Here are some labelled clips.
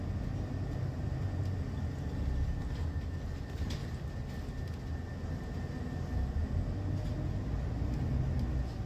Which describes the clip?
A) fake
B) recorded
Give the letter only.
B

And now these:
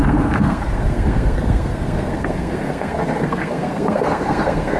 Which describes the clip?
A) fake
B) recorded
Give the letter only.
A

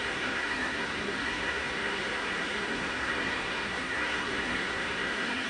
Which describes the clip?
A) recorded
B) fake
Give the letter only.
B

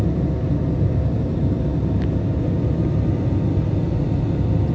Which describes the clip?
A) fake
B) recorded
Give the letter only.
B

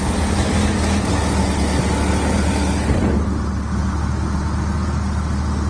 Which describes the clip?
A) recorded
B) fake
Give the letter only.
A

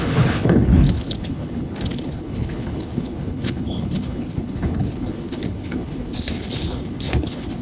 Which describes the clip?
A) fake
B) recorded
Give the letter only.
A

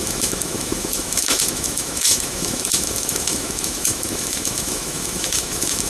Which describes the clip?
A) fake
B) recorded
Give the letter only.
A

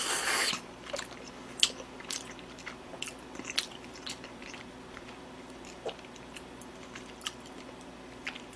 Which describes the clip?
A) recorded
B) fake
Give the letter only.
A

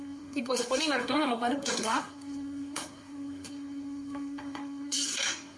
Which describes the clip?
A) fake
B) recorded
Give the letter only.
A